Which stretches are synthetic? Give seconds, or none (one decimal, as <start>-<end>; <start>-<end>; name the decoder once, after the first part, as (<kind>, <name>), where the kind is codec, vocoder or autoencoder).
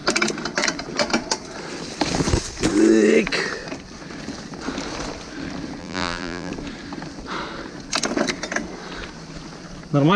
5.8-6.5 (vocoder, BigVGAN v2)